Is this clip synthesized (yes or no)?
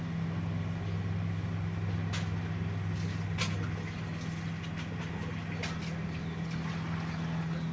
no